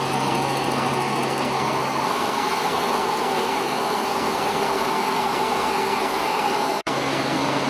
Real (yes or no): no